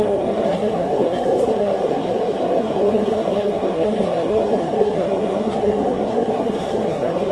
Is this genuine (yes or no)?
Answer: no